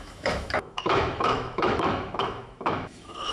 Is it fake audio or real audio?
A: fake